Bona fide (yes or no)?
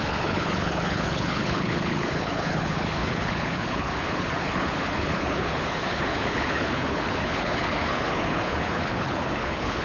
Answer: no